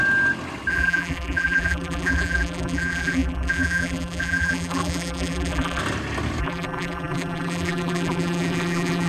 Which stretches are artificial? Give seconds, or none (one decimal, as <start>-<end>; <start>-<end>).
0.7-5.8; 6.4-9.1